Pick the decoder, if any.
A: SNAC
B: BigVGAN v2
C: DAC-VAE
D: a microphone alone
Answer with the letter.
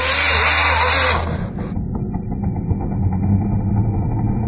D